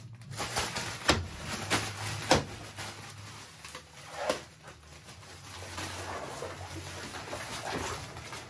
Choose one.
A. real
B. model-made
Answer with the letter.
A